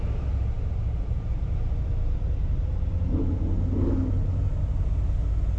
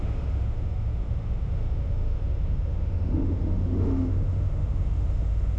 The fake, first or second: second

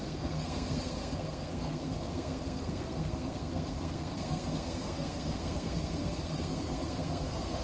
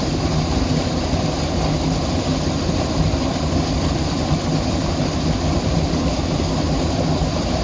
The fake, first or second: first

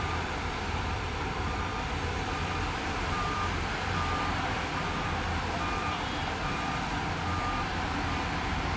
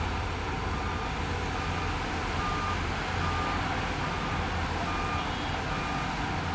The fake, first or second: first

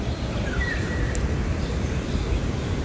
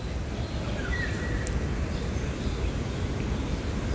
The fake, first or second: first